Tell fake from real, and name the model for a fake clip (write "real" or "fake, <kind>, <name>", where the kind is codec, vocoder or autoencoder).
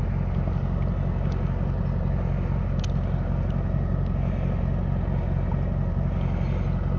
real